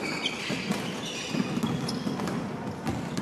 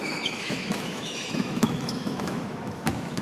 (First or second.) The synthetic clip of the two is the second